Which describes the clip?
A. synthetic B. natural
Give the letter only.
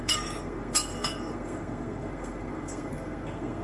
A